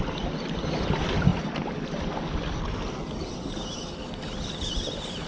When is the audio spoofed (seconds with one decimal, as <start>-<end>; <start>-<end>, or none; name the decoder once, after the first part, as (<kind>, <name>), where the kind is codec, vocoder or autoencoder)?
none